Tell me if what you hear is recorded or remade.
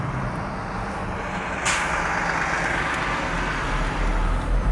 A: recorded